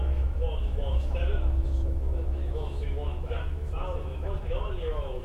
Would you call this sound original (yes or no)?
no